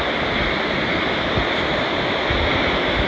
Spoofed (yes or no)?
no